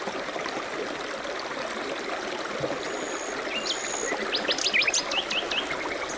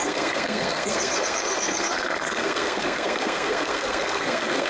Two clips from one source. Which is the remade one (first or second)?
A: second